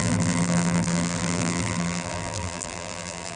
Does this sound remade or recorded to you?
remade